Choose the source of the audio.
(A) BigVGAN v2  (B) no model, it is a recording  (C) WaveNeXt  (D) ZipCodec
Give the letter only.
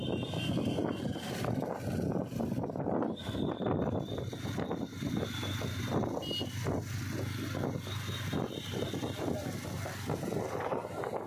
B